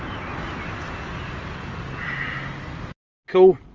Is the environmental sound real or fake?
real